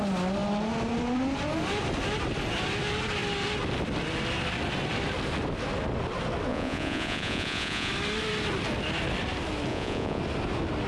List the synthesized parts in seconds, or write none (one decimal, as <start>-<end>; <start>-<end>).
6.5-7.9; 9.7-10.2